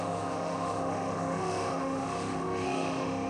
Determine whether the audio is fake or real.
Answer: fake